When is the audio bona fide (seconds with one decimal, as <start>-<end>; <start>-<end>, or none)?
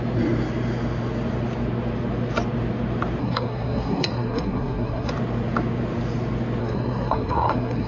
0.0-3.2; 5.1-6.6